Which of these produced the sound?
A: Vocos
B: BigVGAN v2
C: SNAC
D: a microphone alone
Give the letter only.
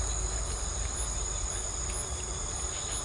D